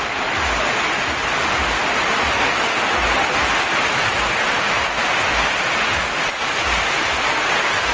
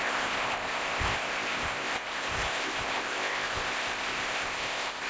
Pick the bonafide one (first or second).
first